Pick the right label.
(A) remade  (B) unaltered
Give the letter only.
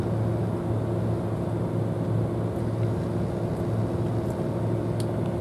B